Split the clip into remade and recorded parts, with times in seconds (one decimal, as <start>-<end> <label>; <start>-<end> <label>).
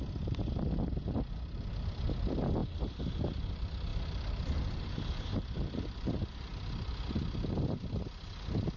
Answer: 0.0-8.8 recorded